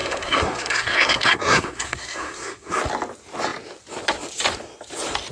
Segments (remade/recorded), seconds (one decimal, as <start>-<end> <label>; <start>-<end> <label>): 0.0-2.8 remade; 2.8-5.3 recorded